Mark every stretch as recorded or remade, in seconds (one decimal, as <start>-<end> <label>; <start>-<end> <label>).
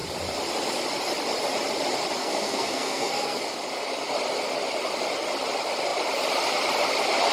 0.0-2.2 recorded; 2.2-3.4 remade; 3.4-7.3 recorded